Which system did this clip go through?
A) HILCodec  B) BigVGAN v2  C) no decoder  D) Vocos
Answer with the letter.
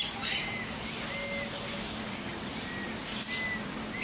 C